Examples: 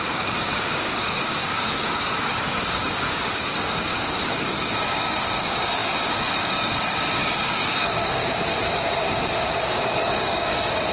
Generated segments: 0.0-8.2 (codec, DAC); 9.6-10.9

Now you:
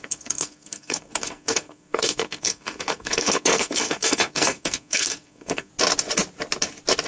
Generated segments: 0.0-5.7 (codec, SNAC)